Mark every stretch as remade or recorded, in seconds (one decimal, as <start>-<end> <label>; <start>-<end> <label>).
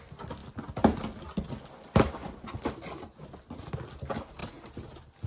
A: 0.0-5.3 recorded